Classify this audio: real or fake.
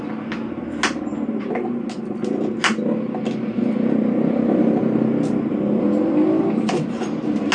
real